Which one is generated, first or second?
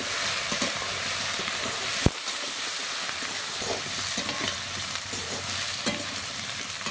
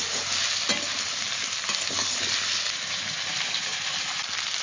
first